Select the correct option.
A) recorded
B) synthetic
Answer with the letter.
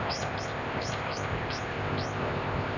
B